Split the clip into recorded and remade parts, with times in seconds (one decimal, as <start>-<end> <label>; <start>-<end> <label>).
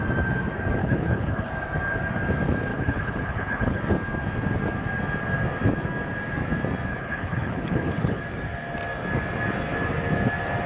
0.0-0.8 recorded; 0.8-1.5 remade; 1.5-2.7 recorded; 2.7-3.8 remade; 3.8-6.9 recorded; 6.9-8.2 remade; 8.2-10.7 recorded